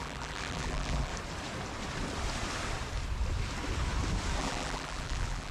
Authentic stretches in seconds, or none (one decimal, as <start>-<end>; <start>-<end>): 1.1-4.4